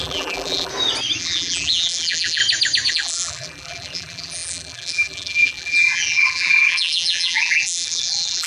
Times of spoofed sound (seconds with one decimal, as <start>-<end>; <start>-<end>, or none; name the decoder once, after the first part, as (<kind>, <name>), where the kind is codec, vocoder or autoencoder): 0.0-0.7 (vocoder, BigVGAN v2); 1.2-2.4; 2.9-8.5